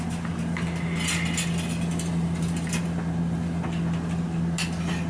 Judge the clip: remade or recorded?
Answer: recorded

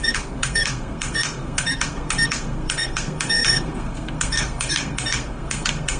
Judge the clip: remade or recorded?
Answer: remade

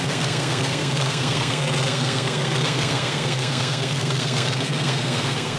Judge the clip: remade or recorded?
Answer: remade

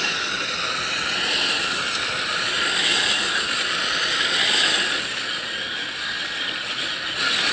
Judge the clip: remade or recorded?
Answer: recorded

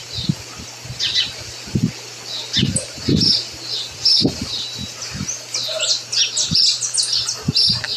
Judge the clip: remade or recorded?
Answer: recorded